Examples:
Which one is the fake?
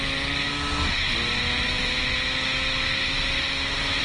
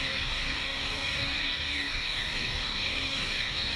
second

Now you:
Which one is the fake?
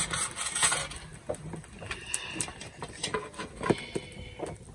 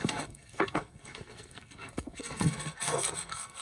second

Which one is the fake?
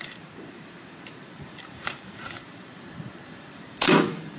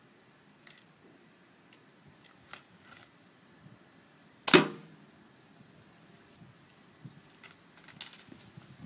first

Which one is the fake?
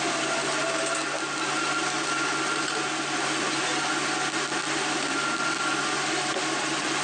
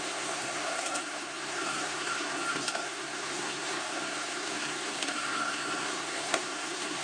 second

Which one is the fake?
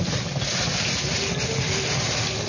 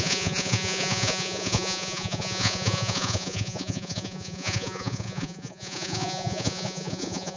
second